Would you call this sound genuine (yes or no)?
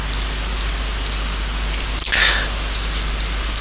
yes